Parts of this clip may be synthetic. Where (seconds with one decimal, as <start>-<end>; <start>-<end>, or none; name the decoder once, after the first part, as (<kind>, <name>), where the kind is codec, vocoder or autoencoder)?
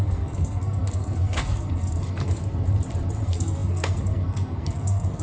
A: 0.0-2.4 (codec, SNAC); 3.2-5.2